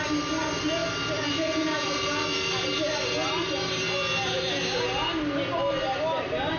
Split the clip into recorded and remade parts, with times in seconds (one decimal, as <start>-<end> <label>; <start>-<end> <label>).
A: 0.0-6.6 recorded